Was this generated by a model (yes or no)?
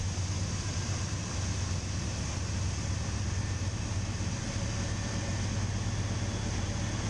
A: no